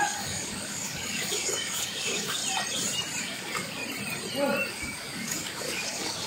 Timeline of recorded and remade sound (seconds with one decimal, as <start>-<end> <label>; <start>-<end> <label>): 0.0-2.4 remade; 2.4-3.2 recorded; 3.2-3.8 remade; 3.8-4.7 recorded; 4.7-6.3 remade